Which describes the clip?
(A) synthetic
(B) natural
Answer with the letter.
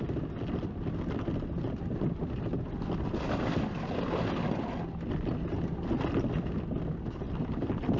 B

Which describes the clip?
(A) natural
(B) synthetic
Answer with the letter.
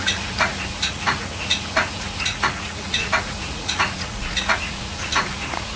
B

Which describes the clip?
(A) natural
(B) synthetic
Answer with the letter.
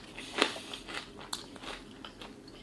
A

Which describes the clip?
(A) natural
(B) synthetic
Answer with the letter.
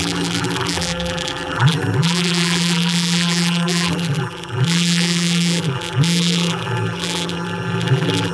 B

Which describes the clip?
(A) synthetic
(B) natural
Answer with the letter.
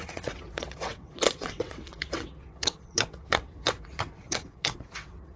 A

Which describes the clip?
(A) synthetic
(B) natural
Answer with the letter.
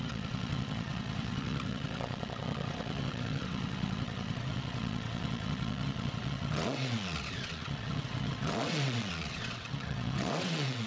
A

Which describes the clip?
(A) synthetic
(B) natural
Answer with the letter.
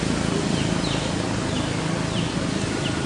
B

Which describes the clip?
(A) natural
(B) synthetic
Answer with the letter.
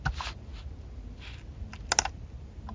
A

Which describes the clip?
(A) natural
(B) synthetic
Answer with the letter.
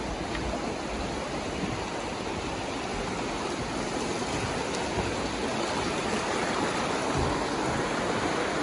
A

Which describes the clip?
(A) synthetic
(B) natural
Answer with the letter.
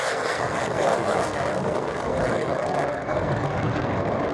A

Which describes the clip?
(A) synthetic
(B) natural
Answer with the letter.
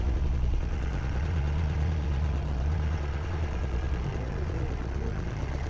A